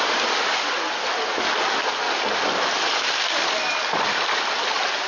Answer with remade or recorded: recorded